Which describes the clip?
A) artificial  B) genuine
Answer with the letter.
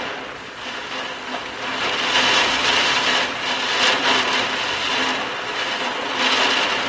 B